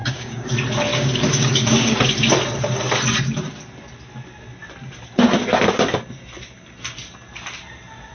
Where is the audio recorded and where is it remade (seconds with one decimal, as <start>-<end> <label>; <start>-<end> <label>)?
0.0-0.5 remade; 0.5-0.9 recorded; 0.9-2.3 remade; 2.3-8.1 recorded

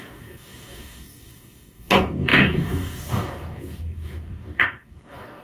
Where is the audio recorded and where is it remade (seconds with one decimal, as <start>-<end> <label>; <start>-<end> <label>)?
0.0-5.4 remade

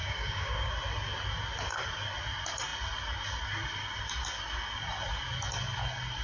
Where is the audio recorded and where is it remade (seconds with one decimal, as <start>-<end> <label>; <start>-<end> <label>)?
0.0-0.7 remade; 0.7-6.2 recorded

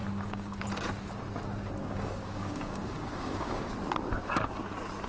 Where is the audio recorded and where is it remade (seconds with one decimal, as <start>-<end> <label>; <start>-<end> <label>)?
0.0-0.6 remade; 0.6-1.8 recorded; 1.8-3.7 remade; 3.7-5.1 recorded

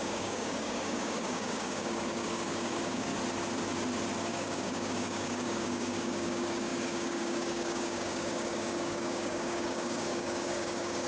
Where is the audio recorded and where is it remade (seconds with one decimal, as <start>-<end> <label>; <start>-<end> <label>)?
0.0-3.1 remade; 3.1-4.2 recorded; 4.2-11.1 remade

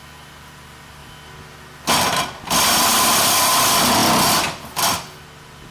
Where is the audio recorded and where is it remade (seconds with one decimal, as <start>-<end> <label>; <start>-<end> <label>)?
0.0-5.7 recorded

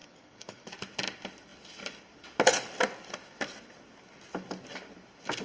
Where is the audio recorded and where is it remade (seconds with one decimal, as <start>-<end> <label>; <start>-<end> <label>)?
0.0-0.7 remade; 0.7-5.4 recorded